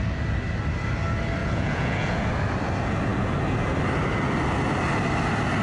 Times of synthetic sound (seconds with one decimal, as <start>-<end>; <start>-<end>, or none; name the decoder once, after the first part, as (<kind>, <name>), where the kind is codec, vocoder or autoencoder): 1.4-2.3 (vocoder, Vocos)